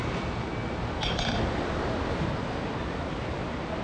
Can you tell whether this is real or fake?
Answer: real